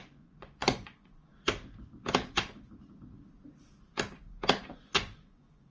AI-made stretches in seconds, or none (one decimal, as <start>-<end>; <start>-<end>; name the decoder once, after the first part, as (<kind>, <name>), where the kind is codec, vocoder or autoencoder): 0.0-1.3 (vocoder, Vocos); 4.7-5.7